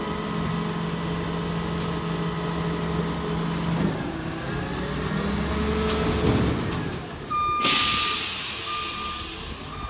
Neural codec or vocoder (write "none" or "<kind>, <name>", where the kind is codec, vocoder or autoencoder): none